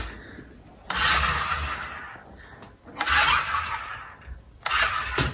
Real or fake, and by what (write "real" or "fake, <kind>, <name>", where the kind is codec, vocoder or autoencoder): real